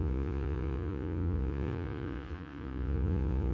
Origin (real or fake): fake